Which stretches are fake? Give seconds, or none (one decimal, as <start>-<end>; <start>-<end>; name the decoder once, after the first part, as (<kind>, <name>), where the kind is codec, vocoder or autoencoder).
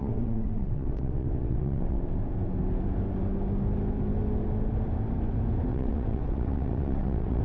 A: 0.0-2.0 (vocoder, WaveNeXt); 5.7-7.4